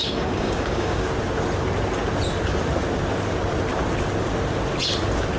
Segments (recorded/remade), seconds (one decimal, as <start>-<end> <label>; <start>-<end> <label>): 0.0-1.1 remade; 1.1-5.4 recorded